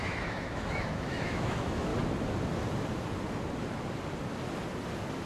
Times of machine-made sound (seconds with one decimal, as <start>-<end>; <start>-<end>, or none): 0.0-1.9